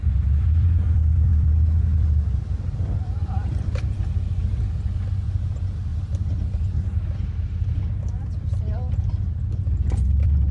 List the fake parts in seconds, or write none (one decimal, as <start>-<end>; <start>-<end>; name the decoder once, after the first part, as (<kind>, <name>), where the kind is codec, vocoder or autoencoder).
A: 0.0-5.9 (vocoder, BigVGAN v2); 8.3-10.5